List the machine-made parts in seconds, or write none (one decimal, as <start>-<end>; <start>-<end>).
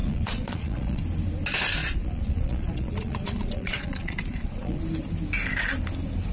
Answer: 0.0-1.0; 1.8-4.8